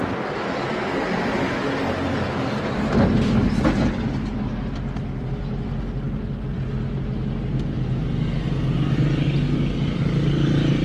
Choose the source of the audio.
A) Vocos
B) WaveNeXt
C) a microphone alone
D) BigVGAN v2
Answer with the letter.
C